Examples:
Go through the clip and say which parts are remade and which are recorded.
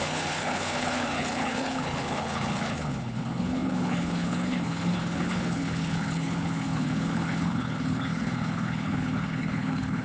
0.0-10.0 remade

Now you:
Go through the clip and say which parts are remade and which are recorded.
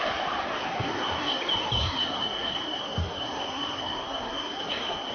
0.0-0.7 recorded; 0.7-1.4 remade; 1.4-1.8 recorded; 1.8-5.1 remade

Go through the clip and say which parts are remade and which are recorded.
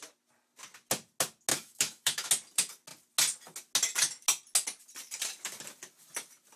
0.0-1.5 recorded; 1.5-2.3 remade; 2.3-6.6 recorded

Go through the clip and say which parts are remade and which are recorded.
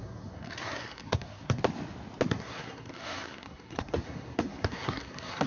0.0-1.6 remade; 1.6-2.3 recorded; 2.3-5.5 remade